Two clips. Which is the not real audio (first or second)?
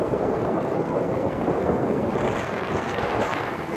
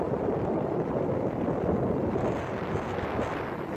first